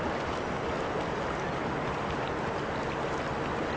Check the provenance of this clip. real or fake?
real